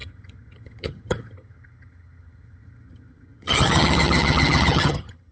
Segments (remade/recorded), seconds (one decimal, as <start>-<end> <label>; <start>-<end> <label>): 0.0-5.3 remade